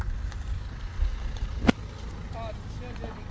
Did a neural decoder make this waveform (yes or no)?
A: no